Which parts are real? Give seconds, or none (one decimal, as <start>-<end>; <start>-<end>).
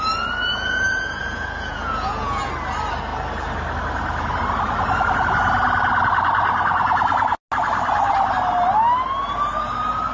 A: 0.0-0.5; 2.5-10.1